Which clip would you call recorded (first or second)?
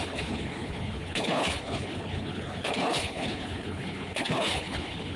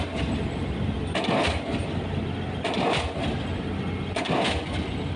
second